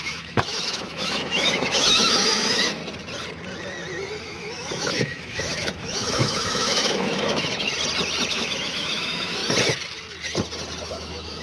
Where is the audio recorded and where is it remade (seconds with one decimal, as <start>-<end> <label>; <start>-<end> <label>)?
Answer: 0.0-2.8 remade; 2.8-4.2 recorded; 4.2-7.7 remade; 7.7-8.3 recorded; 8.3-9.4 remade; 9.4-10.9 recorded; 10.9-11.4 remade